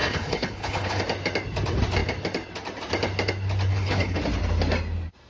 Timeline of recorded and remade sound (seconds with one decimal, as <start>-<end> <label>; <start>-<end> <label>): 0.0-1.0 remade; 1.0-3.7 recorded; 3.7-4.2 remade; 4.2-5.3 recorded